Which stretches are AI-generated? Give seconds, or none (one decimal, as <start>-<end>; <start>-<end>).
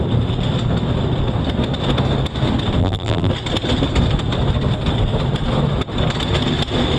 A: 2.8-3.3